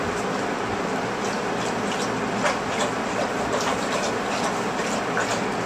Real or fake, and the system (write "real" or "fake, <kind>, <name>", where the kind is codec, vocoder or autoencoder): real